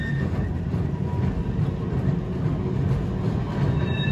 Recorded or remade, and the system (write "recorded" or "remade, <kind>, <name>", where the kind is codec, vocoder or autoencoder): recorded